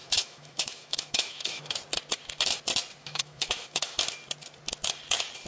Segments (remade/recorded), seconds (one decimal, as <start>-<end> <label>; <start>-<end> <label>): 0.0-1.8 remade; 1.8-3.0 recorded; 3.0-4.0 remade; 4.0-5.5 recorded